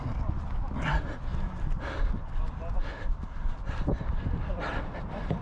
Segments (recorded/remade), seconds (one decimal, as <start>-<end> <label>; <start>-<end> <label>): 0.0-5.4 recorded